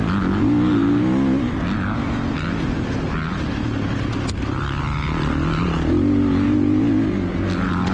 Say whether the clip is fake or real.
real